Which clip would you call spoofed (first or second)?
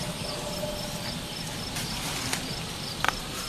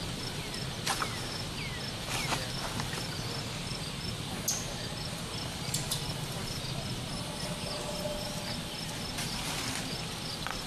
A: first